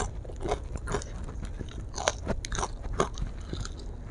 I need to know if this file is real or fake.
real